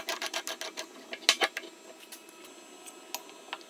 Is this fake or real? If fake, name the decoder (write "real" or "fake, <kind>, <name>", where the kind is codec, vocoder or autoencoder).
real